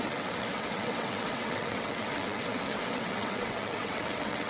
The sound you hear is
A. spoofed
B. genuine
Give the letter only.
A